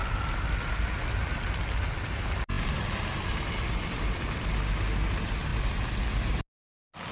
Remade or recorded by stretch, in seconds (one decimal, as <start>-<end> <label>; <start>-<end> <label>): 0.0-7.1 recorded